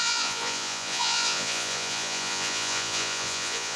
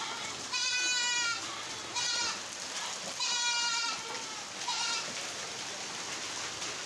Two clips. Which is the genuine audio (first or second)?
second